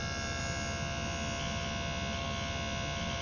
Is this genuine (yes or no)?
yes